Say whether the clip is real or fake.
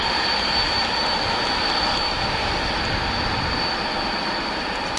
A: real